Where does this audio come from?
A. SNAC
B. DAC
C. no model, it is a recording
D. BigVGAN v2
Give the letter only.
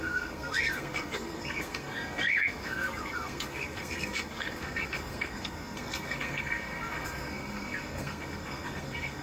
A